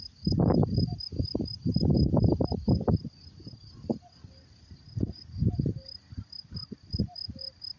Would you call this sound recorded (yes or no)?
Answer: yes